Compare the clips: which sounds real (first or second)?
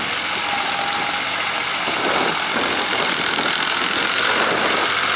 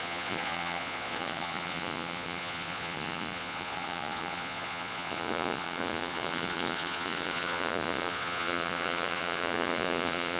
first